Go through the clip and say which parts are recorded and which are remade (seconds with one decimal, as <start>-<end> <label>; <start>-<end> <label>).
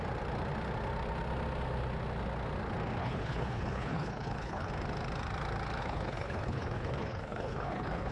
0.0-3.0 recorded; 3.0-4.7 remade; 4.7-5.8 recorded; 5.8-8.1 remade